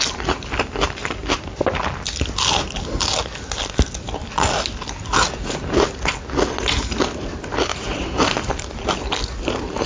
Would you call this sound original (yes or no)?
yes